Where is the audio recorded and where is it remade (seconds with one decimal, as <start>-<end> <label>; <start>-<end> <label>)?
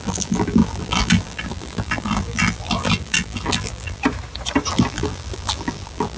0.0-4.0 remade; 4.0-4.7 recorded; 4.7-6.2 remade